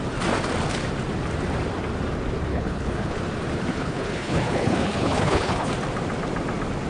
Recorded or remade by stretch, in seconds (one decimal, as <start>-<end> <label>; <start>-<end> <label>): 0.0-2.5 recorded; 2.5-3.2 remade; 3.2-3.7 recorded; 3.7-5.7 remade; 5.7-6.9 recorded